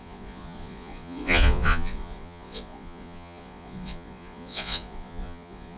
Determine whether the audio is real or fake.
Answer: fake